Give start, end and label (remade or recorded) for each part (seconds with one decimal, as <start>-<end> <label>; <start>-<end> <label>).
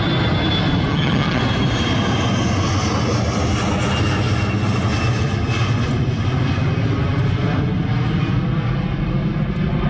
0.0-0.9 recorded; 0.9-1.4 remade; 1.4-9.9 recorded